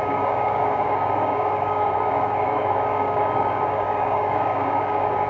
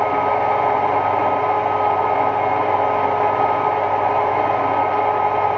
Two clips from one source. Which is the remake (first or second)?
first